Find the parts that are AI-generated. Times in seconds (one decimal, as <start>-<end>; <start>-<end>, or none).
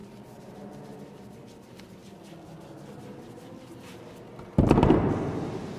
none